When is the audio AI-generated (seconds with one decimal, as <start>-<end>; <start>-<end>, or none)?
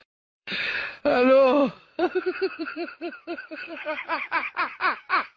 0.0-0.7; 1.6-4.8